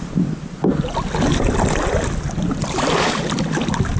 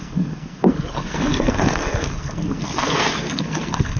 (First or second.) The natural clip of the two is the first